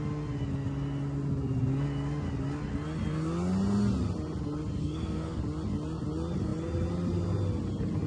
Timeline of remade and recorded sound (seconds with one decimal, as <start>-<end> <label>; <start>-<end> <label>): 0.0-4.8 recorded; 4.8-5.4 remade; 5.4-8.1 recorded